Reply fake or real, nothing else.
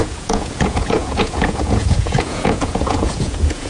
fake